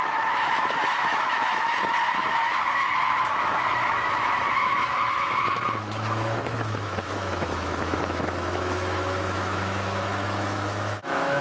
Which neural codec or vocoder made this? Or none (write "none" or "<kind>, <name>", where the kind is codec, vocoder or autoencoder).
autoencoder, DAC-VAE